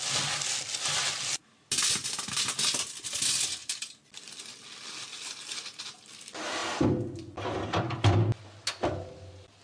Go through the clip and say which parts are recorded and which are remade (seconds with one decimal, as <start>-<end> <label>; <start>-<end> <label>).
0.0-9.6 recorded